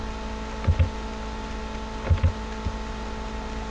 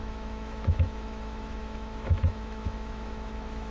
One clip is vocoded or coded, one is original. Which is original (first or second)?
first